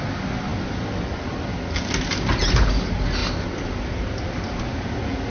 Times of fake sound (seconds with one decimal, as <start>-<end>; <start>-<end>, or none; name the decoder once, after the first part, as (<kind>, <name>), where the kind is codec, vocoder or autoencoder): none